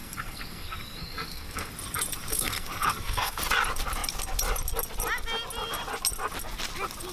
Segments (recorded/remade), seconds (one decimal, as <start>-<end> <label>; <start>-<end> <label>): 0.0-1.7 remade; 1.7-2.3 recorded; 2.3-3.4 remade; 3.4-7.1 recorded